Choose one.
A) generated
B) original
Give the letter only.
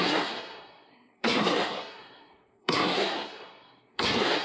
A